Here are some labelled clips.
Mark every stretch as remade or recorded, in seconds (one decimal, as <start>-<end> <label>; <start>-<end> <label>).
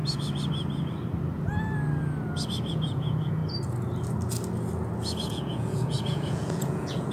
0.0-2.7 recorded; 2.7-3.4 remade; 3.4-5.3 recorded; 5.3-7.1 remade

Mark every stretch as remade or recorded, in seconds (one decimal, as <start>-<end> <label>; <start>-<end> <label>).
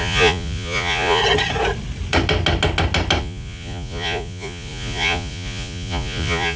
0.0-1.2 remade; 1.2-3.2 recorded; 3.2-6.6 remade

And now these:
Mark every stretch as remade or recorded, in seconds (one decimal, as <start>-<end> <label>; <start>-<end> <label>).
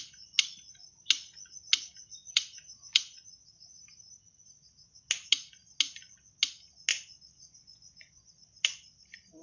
0.0-2.2 recorded; 2.2-3.8 remade; 3.8-6.9 recorded; 6.9-8.3 remade; 8.3-9.4 recorded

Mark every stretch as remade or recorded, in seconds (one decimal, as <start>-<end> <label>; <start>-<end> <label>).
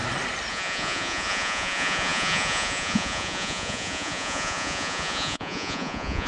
0.0-0.5 recorded; 0.5-6.3 remade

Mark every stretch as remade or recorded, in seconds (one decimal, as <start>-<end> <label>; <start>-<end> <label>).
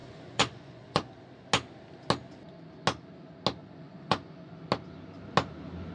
0.0-1.1 remade; 1.1-3.6 recorded; 3.6-4.5 remade; 4.5-5.9 recorded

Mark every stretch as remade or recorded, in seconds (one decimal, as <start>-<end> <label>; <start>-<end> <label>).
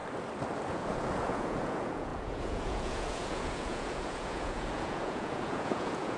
0.0-0.7 recorded; 0.7-6.2 remade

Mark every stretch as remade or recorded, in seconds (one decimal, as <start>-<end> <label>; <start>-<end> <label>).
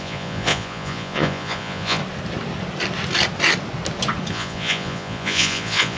0.0-2.0 remade; 2.0-4.3 recorded; 4.3-6.0 remade